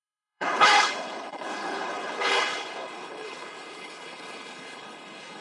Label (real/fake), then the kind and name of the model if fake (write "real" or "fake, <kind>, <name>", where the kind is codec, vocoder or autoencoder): fake, codec, HILCodec